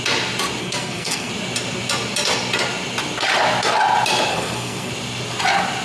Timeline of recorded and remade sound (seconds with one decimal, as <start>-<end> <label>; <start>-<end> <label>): 0.0-0.6 recorded; 0.6-1.3 remade; 1.3-4.3 recorded; 4.3-4.9 remade; 4.9-5.8 recorded